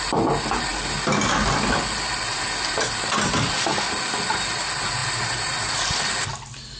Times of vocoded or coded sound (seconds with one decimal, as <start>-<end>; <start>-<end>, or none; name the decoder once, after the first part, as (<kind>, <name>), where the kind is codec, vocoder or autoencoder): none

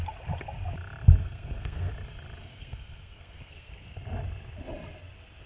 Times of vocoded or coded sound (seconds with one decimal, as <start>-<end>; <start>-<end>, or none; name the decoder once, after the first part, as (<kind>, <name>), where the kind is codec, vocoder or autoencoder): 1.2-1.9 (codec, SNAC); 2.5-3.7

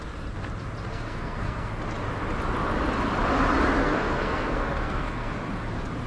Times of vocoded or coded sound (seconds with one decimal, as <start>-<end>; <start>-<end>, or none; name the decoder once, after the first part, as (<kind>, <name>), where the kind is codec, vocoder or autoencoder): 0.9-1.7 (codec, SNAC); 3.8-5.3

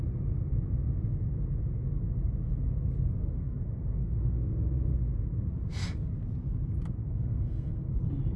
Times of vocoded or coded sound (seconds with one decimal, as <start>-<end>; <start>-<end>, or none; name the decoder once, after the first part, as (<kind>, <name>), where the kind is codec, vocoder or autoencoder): 3.2-4.5 (codec, SNAC); 7.0-7.9

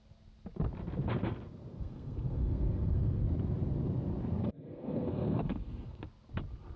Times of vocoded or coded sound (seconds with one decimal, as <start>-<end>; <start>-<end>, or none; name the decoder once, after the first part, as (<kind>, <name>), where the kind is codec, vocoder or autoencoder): 1.7-3.2 (codec, SNAC); 4.4-6.0

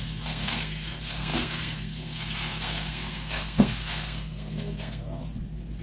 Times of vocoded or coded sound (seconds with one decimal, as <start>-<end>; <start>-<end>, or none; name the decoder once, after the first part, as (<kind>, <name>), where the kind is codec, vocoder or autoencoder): 0.0-5.2 (codec, SNAC)

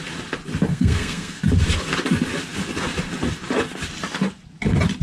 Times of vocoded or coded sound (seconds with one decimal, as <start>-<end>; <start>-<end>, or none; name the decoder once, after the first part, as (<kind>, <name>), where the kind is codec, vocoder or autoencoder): 0.7-1.4 (codec, SNAC)